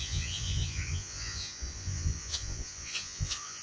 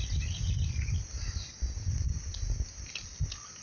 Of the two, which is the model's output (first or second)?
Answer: first